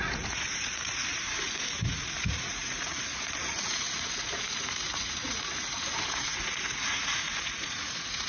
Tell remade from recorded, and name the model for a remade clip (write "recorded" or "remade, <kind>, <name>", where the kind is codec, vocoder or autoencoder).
remade, vocoder, Vocos